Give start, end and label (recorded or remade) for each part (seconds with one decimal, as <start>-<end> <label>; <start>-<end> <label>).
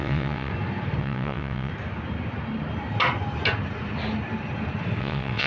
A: 0.0-0.5 remade; 0.5-1.0 recorded; 1.0-1.7 remade; 1.7-5.0 recorded; 5.0-5.5 remade